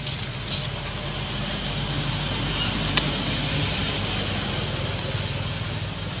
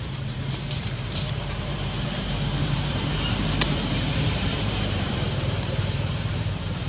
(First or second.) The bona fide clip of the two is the first